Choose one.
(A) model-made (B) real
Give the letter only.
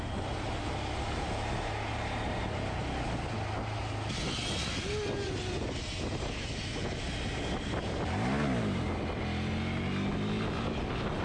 B